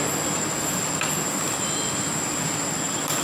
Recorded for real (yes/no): yes